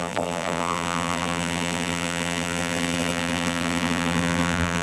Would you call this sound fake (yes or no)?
yes